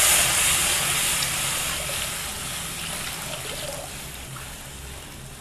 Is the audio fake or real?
real